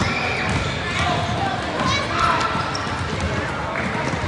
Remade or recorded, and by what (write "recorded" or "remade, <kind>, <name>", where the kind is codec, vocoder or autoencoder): recorded